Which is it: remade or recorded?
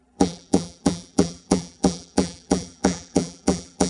remade